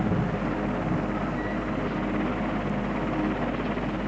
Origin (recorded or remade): recorded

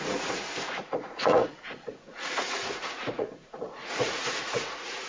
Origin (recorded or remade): remade